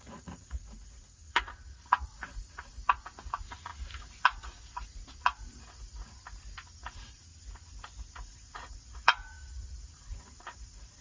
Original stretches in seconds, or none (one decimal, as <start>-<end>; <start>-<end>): 6.2-6.8; 7.3-8.1